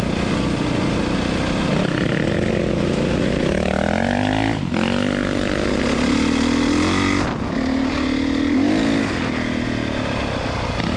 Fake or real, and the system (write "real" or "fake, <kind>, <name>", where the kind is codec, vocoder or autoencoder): real